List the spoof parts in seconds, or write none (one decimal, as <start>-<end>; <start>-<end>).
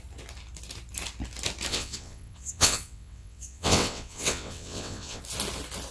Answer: 1.7-5.2